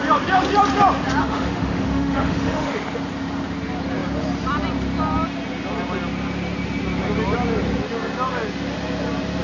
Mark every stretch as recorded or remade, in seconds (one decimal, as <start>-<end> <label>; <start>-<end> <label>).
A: 0.0-1.2 recorded; 1.2-2.7 remade; 2.7-9.4 recorded